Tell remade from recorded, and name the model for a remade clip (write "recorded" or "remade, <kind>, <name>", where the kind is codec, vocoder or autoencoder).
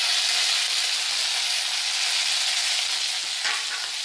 recorded